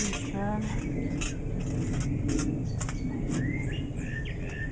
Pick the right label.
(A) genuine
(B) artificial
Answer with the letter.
A